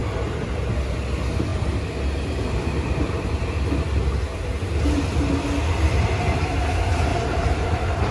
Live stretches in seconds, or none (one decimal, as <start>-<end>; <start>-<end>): 0.7-7.1